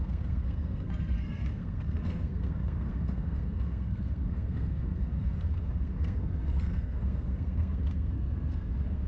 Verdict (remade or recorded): remade